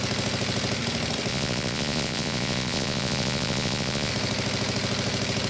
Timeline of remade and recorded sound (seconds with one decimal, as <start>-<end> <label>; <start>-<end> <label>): 0.0-1.3 recorded; 1.3-4.1 remade; 4.1-5.5 recorded